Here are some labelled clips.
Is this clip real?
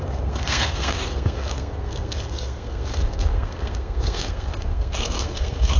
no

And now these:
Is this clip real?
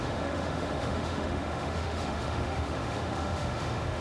no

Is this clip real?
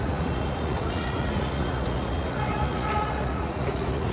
no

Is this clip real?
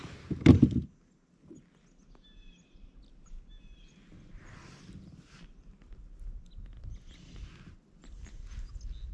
yes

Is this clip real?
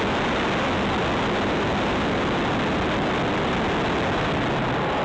yes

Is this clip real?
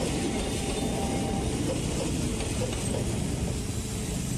yes